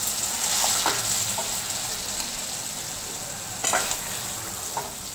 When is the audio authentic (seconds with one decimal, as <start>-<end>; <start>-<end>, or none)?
0.0-5.1